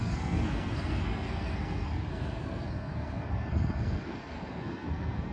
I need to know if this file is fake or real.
fake